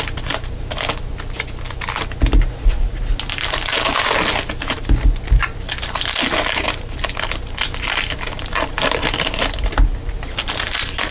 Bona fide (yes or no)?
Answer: yes